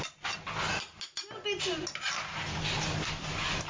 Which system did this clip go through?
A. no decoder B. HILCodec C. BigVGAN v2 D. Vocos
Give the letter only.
A